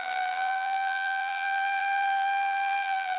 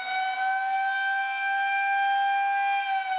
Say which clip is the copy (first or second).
first